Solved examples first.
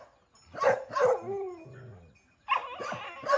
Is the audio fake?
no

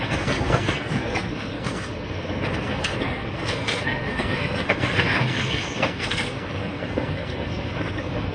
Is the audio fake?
yes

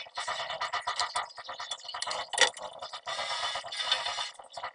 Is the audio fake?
no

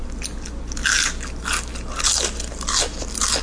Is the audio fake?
no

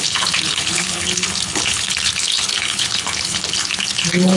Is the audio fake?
yes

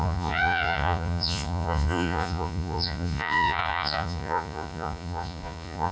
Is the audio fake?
yes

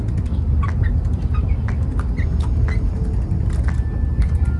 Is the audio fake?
no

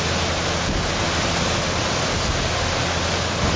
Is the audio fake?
no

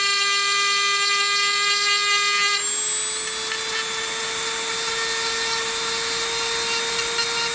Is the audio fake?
no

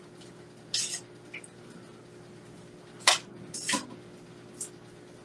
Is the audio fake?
no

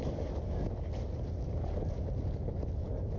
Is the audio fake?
no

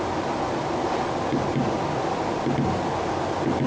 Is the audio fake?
no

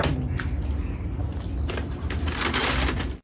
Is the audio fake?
no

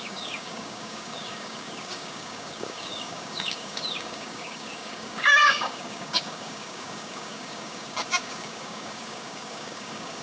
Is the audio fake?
yes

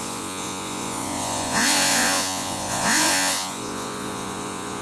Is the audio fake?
yes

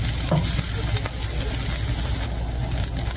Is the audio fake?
no